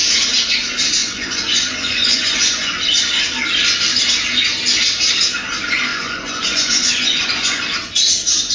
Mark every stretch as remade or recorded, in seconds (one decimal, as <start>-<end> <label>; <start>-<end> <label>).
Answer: 0.0-1.0 recorded; 1.0-2.8 remade; 2.8-5.9 recorded; 5.9-7.6 remade; 7.6-8.5 recorded